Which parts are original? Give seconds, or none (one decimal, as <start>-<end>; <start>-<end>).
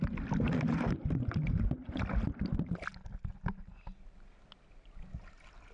0.0-5.7